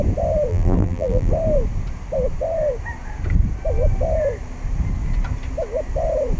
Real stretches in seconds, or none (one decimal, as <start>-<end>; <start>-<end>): 0.0-0.5; 1.3-6.4